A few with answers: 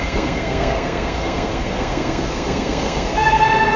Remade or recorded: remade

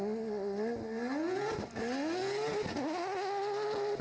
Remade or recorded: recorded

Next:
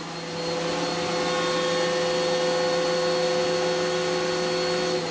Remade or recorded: recorded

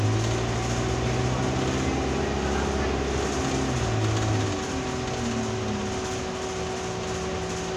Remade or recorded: recorded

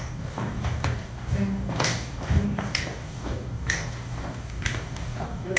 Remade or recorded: remade